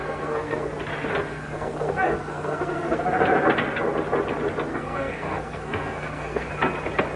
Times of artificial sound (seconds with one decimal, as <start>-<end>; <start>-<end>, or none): 0.0-0.7; 1.3-3.0; 4.7-6.5